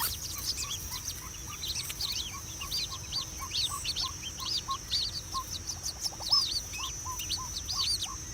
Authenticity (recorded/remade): recorded